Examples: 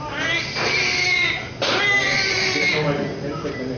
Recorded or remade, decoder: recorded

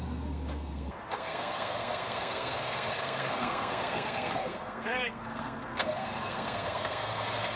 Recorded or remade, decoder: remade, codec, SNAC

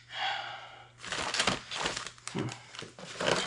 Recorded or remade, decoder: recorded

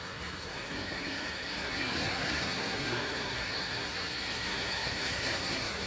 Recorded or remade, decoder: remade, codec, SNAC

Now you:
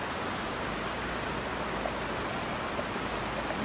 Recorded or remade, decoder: recorded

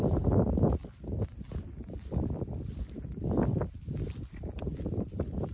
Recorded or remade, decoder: recorded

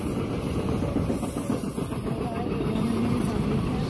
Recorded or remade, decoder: recorded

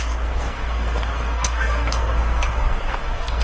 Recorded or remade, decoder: remade, codec, SNAC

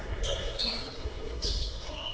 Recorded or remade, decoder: remade, codec, SNAC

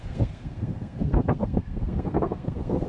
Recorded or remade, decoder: remade, codec, SNAC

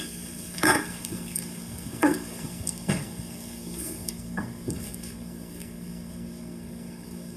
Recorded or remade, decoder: remade, codec, SNAC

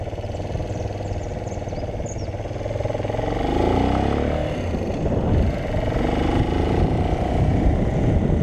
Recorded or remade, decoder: recorded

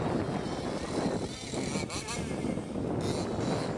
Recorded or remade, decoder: recorded